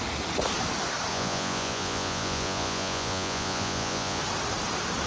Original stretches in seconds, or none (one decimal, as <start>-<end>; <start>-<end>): 0.0-1.1; 4.2-5.1